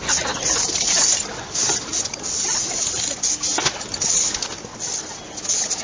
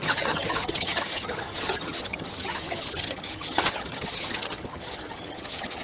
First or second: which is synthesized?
second